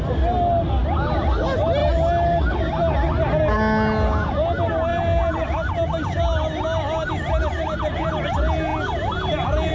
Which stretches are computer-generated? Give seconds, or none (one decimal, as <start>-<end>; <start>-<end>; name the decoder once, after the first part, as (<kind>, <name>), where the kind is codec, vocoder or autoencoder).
none